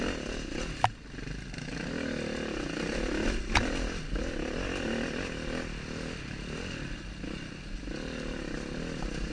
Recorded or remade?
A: recorded